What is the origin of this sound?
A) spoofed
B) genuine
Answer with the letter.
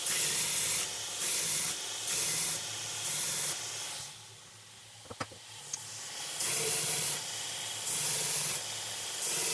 B